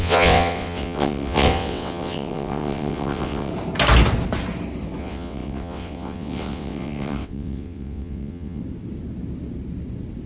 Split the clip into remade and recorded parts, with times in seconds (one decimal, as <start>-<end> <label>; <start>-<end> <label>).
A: 0.0-3.5 remade; 3.5-5.0 recorded; 5.0-8.6 remade; 8.6-10.3 recorded